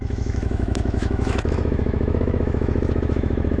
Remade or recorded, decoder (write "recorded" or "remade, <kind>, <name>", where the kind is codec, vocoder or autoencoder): remade, autoencoder, DAC-VAE